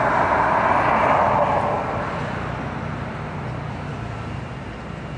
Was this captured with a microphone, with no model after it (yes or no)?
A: yes